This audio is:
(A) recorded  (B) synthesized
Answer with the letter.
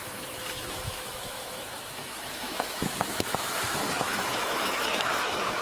B